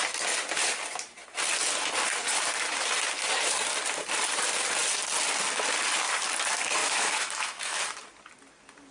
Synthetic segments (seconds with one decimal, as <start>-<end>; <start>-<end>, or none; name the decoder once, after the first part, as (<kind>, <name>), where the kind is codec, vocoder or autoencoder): 6.8-7.8 (autoencoder, DAC-VAE)

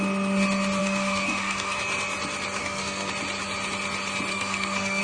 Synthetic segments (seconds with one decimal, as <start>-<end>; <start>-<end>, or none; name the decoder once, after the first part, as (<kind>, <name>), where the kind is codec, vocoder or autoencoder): 0.8-1.8 (codec, SNAC); 2.6-3.1; 4.3-5.0

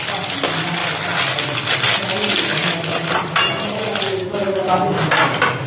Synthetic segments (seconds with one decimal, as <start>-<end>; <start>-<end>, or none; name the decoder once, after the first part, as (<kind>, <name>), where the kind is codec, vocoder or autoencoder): none

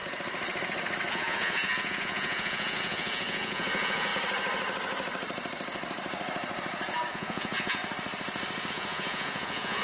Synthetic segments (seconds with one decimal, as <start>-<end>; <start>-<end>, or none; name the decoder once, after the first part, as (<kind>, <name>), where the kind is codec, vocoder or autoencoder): 1.1-4.1 (vocoder, Vocos); 7.1-7.8; 8.7-9.8

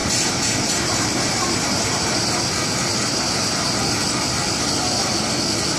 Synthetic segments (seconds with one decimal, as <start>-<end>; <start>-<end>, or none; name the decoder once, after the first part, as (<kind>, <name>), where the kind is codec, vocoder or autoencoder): 0.0-2.4 (vocoder, BigVGAN v2); 2.9-3.8